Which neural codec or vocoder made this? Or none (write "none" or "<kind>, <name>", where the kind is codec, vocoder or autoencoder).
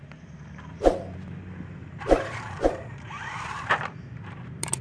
vocoder, BigVGAN v2